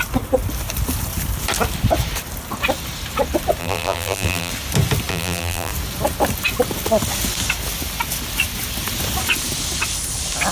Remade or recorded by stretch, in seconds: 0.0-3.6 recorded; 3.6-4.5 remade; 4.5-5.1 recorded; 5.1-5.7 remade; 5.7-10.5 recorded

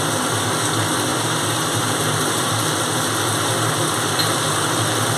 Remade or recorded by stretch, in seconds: 0.0-1.1 recorded; 1.1-2.8 remade; 2.8-5.2 recorded

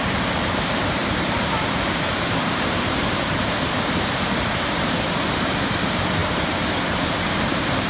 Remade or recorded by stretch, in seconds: 0.0-7.9 remade

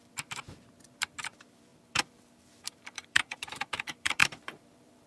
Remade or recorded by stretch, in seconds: 0.0-5.1 remade